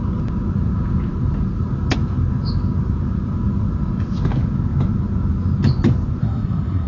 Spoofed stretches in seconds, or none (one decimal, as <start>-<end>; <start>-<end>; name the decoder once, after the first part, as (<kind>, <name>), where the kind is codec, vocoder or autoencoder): 6.2-6.9 (codec, SNAC)